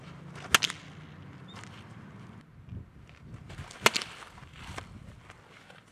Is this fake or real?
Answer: real